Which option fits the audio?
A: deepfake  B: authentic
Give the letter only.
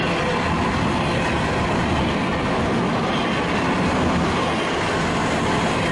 B